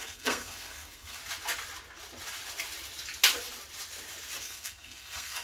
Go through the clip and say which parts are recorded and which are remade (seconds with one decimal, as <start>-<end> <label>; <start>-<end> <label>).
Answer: 0.0-1.2 remade; 1.2-4.4 recorded; 4.4-5.4 remade